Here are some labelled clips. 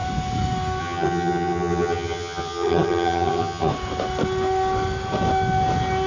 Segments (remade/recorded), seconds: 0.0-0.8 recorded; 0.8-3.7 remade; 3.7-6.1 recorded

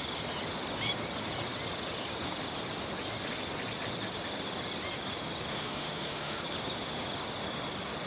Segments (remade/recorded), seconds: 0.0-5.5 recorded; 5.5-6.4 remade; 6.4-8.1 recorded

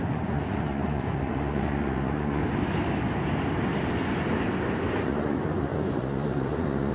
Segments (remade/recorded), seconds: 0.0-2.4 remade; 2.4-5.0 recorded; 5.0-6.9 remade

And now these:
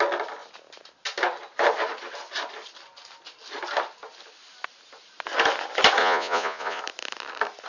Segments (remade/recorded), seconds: 0.0-6.0 recorded; 6.0-6.8 remade; 6.8-7.7 recorded

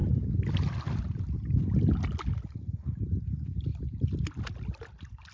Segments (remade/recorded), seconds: 0.0-5.3 recorded

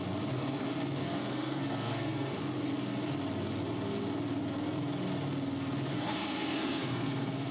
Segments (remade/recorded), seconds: 0.0-1.0 recorded; 1.0-2.4 remade; 2.4-5.9 recorded; 5.9-7.5 remade

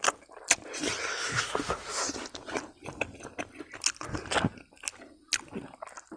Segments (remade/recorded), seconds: 0.0-1.2 recorded; 1.2-2.0 remade; 2.0-6.2 recorded